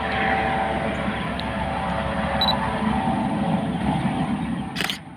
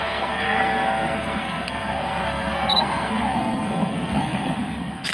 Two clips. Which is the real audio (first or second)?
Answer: first